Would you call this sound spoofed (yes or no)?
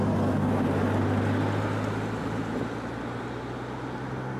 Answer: no